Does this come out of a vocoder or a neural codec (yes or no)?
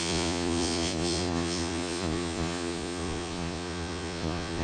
yes